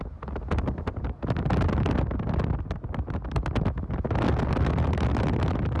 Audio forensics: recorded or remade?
recorded